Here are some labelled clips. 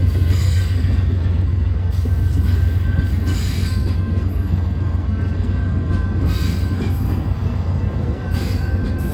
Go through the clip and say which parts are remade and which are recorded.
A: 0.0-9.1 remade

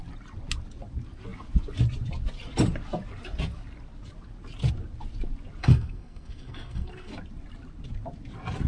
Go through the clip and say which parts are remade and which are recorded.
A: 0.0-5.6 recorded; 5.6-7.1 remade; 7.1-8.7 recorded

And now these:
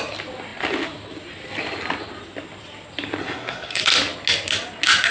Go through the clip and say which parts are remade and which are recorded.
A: 0.0-3.2 recorded; 3.2-3.8 remade; 3.8-5.1 recorded